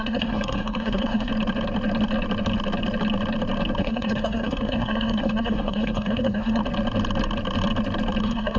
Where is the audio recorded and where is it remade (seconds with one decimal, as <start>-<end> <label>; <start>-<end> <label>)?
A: 0.0-1.3 remade; 1.3-3.8 recorded; 3.8-6.6 remade; 6.6-8.2 recorded; 8.2-8.6 remade